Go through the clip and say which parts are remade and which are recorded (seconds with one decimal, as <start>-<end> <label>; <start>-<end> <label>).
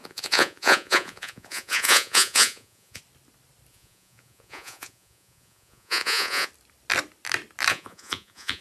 0.0-3.0 remade; 3.0-3.7 recorded; 3.7-6.5 remade; 6.5-7.7 recorded; 7.7-8.6 remade